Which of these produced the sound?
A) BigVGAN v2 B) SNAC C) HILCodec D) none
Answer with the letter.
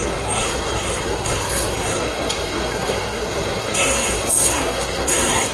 B